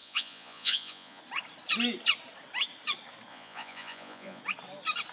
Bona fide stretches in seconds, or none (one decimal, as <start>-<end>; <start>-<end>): 1.2-3.3; 4.4-5.1

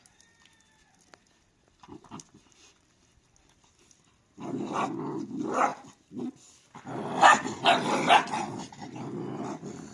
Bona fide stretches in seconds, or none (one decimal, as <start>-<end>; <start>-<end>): 0.0-9.9

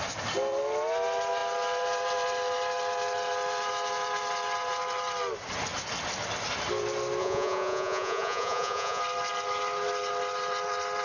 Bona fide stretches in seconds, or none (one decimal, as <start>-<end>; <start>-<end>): 0.0-7.2; 9.0-11.0

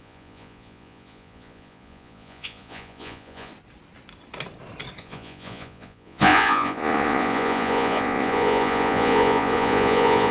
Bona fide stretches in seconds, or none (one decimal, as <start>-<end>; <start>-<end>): 3.5-5.0

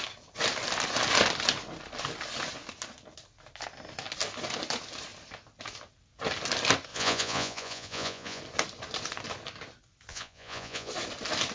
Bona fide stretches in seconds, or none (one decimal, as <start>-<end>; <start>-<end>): 0.0-6.9; 8.4-10.1; 10.9-11.5

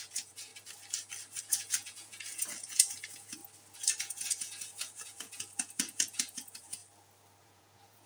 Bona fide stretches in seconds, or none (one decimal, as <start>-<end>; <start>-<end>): 0.5-1.4; 3.4-4.0; 6.8-7.4